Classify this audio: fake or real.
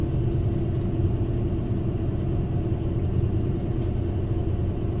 real